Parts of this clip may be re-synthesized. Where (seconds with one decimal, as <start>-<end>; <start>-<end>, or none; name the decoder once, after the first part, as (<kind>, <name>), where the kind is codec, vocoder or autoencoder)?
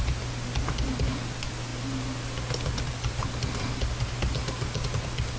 none